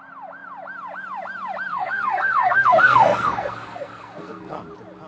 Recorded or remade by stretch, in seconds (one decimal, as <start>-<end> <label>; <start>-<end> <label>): 0.0-1.7 recorded; 1.7-4.6 remade; 4.6-5.1 recorded